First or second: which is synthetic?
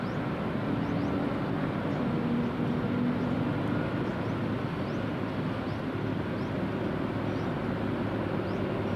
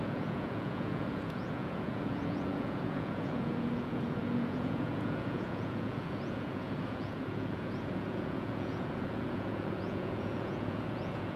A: second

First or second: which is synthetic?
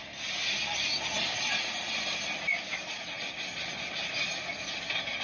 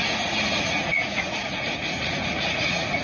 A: second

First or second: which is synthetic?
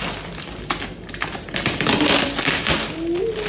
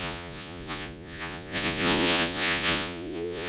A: second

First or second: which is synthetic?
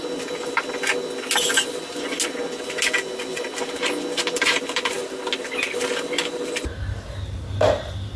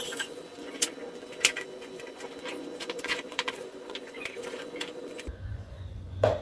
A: second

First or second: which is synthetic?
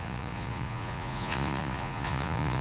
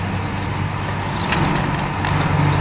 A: first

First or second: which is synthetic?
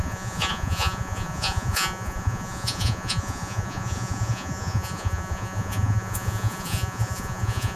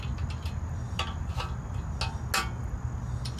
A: first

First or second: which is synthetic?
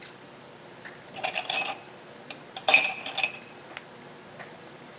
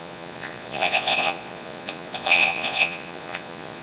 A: second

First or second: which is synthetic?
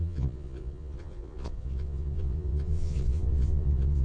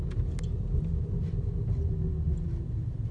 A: first